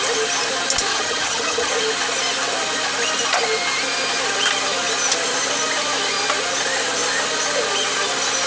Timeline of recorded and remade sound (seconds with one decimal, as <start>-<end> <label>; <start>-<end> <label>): 0.0-0.9 recorded; 0.9-1.7 remade; 1.7-8.5 recorded